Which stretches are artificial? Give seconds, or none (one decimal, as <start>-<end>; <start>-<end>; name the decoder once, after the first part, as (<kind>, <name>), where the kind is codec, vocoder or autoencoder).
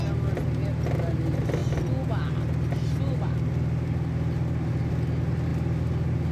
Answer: none